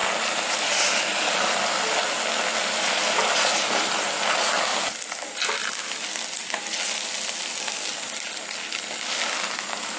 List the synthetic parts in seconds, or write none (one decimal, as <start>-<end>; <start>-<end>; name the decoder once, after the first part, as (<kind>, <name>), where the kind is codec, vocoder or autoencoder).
none